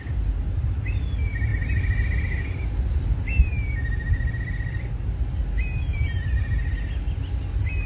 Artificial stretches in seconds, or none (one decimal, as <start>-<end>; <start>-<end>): none